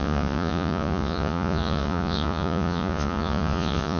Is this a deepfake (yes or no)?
yes